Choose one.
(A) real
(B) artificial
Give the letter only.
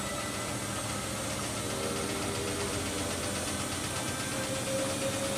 A